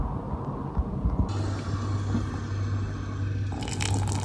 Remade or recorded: recorded